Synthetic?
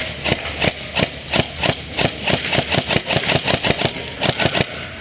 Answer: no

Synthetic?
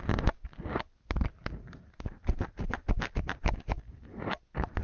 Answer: no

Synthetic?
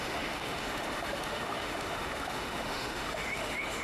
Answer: yes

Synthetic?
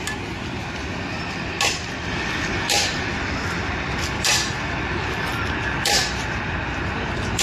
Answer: no